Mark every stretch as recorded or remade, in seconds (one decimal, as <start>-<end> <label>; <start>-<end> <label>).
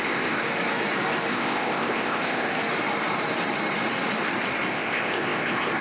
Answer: 0.0-0.4 remade; 0.4-1.3 recorded; 1.3-2.5 remade; 2.5-4.7 recorded; 4.7-5.8 remade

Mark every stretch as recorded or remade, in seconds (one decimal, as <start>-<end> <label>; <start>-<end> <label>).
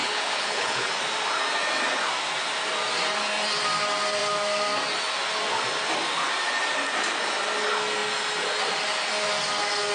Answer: 0.0-0.9 remade; 0.9-9.9 recorded